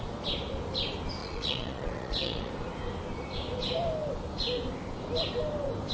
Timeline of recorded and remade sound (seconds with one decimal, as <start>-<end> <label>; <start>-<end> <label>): 0.0-1.2 recorded; 1.2-2.5 remade; 2.5-5.9 recorded